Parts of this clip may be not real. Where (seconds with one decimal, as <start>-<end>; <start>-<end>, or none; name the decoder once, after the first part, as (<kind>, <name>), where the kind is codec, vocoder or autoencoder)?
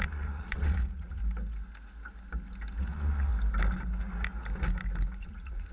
0.0-1.2 (vocoder, Vocos); 2.8-3.3; 5.2-5.7